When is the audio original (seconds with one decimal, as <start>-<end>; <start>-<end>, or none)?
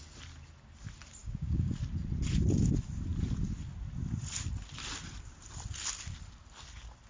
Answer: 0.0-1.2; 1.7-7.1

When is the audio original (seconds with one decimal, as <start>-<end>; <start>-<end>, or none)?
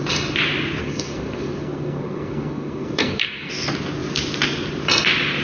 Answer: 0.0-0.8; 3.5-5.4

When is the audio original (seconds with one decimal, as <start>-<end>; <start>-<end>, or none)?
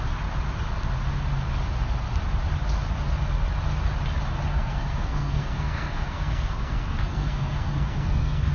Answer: 0.0-4.5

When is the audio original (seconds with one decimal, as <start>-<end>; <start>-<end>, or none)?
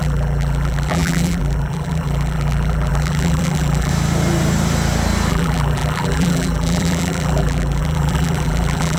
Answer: 3.9-5.3